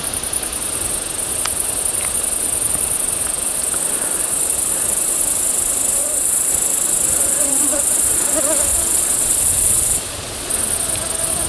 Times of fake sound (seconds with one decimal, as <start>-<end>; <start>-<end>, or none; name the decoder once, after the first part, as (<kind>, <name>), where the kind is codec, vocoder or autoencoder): 6.0-6.5 (vocoder, Vocos); 7.2-8.2; 8.7-10.5

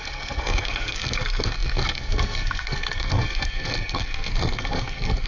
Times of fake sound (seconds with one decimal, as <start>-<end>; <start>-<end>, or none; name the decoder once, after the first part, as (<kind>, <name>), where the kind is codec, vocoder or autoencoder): 0.0-5.3 (codec, SNAC)

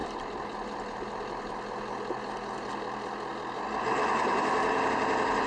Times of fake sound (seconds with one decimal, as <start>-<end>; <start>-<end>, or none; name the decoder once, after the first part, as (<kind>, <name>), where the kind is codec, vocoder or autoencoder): none